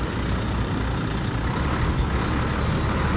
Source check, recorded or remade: recorded